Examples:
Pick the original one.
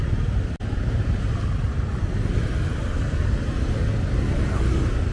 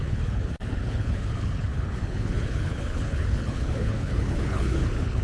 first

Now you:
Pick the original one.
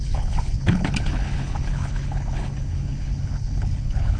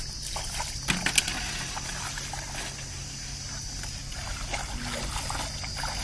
second